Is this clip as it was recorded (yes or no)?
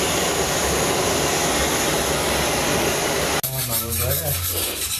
yes